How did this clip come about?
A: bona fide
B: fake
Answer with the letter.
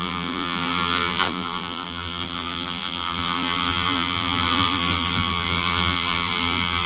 B